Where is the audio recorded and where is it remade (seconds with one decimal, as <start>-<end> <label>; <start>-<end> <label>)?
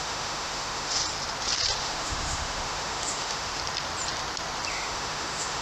0.0-1.0 remade; 1.0-1.8 recorded; 1.8-3.6 remade; 3.6-4.7 recorded; 4.7-5.6 remade